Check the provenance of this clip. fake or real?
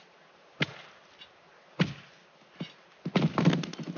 real